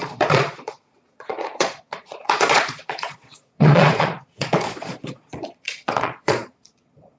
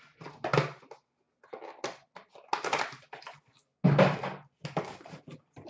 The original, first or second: second